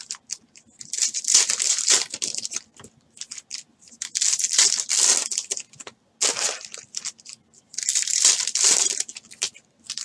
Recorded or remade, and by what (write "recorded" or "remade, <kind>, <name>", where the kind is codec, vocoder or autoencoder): recorded